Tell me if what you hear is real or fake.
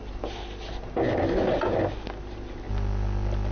real